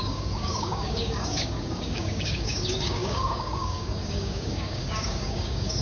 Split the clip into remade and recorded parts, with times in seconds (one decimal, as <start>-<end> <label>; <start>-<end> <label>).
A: 0.0-5.8 remade